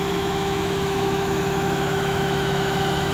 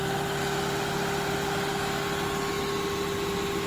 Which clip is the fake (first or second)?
first